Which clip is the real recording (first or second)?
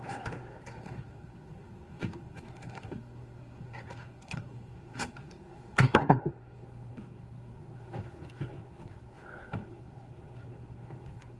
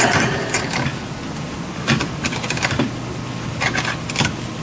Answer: second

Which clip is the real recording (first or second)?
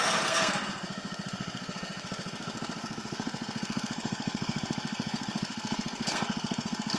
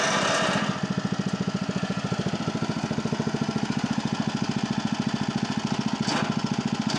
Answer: second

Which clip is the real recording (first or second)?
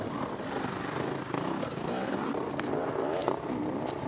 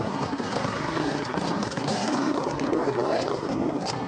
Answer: first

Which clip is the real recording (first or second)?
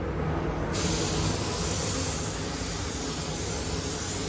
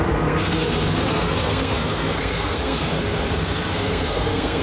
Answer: first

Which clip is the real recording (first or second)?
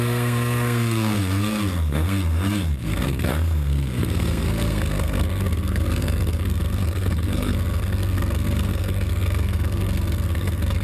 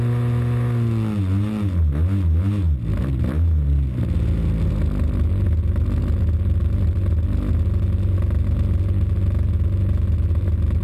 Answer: second